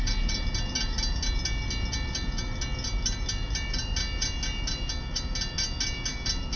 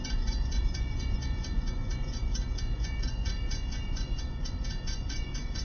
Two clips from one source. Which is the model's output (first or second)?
second